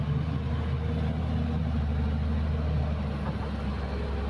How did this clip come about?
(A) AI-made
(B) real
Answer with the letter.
B